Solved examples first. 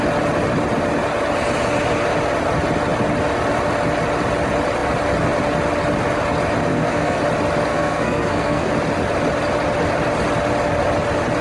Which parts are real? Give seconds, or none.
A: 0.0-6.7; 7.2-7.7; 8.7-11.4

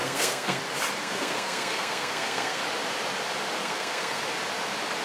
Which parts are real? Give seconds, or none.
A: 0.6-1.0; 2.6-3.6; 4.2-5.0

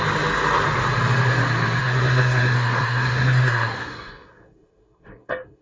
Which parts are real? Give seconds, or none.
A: 0.0-1.8